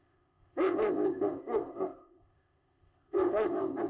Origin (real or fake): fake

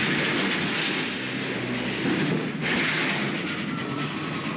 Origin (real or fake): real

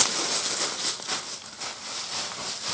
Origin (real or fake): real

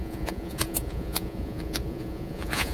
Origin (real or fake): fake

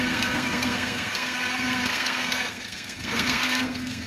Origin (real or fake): fake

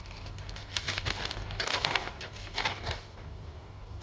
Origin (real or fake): fake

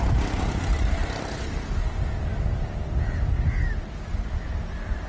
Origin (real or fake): real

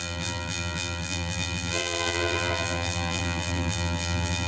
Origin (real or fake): fake